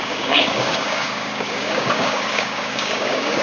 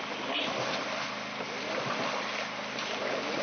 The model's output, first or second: first